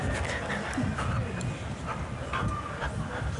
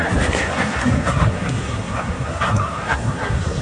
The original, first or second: first